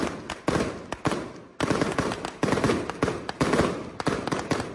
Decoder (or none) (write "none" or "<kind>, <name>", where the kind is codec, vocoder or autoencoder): none